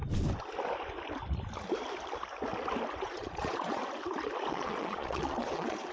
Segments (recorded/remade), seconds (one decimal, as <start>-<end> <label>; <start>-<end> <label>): 0.0-3.0 recorded; 3.0-3.8 remade; 3.8-4.5 recorded; 4.5-5.9 remade